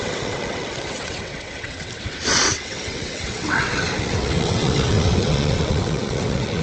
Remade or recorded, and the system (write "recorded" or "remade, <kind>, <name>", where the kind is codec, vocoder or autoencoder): remade, vocoder, WaveNeXt